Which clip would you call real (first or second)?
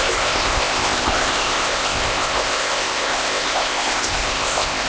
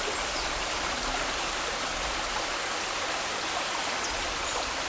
second